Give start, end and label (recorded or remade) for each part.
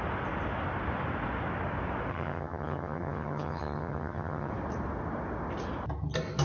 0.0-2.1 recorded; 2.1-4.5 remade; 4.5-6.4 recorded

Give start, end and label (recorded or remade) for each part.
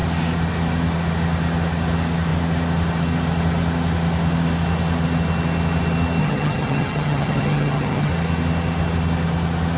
0.0-6.2 recorded; 6.2-8.1 remade; 8.1-9.8 recorded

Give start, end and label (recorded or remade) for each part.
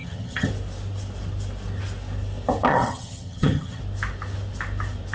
0.0-0.5 remade; 0.5-2.7 recorded; 2.7-3.8 remade; 3.8-5.1 recorded